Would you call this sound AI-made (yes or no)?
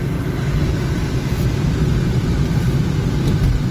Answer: no